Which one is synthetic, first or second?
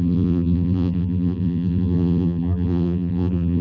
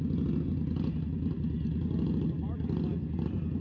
first